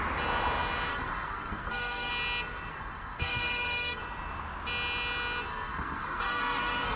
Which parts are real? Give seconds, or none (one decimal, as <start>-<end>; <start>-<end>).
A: 0.0-0.9; 2.1-2.7; 4.0-5.5